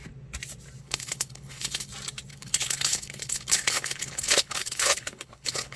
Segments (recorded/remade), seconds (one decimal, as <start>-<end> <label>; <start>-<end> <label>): 0.0-0.8 recorded; 0.8-1.9 remade; 1.9-2.3 recorded; 2.3-5.8 remade